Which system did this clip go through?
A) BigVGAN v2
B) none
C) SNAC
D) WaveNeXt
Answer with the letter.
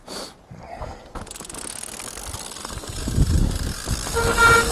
B